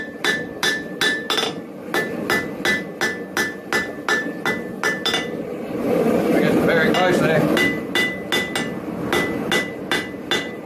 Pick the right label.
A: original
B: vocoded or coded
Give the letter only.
A